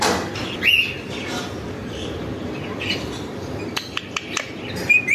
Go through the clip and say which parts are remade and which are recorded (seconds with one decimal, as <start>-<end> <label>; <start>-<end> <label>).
0.0-1.8 recorded; 1.8-5.1 remade